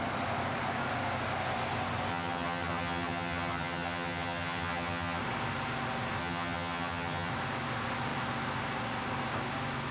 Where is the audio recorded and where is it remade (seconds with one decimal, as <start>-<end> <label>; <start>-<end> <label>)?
0.0-2.1 recorded; 2.1-5.2 remade; 5.2-6.2 recorded; 6.2-7.3 remade; 7.3-9.9 recorded